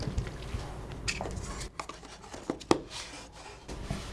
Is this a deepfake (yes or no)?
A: no